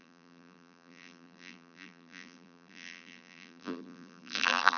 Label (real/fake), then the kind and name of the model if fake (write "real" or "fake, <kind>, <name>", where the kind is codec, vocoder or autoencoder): fake, vocoder, BigVGAN v2